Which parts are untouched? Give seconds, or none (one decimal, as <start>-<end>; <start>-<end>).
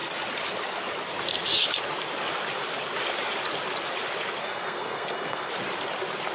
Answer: 0.0-4.4; 5.5-6.3